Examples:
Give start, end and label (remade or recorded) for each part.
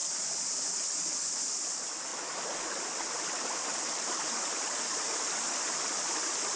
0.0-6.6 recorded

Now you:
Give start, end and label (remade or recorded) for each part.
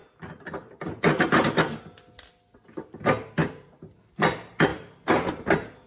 0.0-5.9 recorded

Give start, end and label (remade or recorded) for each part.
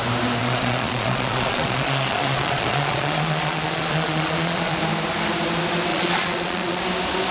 0.0-0.4 recorded; 0.4-4.8 remade; 4.8-5.9 recorded; 5.9-6.8 remade; 6.8-7.3 recorded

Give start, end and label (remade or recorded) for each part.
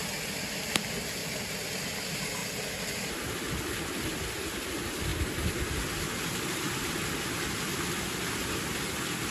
0.0-2.4 recorded; 2.4-3.1 remade; 3.1-9.3 recorded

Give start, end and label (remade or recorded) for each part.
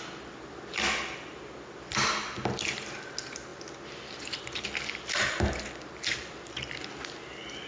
0.0-7.7 recorded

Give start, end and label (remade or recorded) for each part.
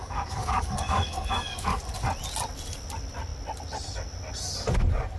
0.0-1.8 remade; 1.8-5.2 recorded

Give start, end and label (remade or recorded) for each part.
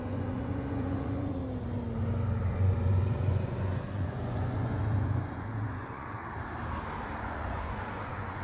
0.0-1.4 remade; 1.4-2.5 recorded; 2.5-6.2 remade; 6.2-7.2 recorded; 7.2-8.4 remade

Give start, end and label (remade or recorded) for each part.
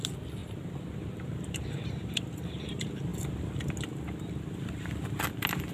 0.0-0.4 recorded; 0.4-1.7 remade; 1.7-5.7 recorded